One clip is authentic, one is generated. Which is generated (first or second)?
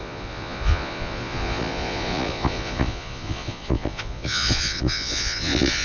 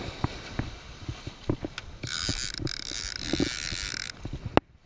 first